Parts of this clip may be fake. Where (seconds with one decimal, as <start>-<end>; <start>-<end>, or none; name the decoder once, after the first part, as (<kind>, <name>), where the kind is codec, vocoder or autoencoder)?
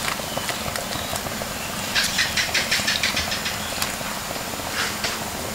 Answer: 1.1-3.1 (vocoder, BigVGAN v2)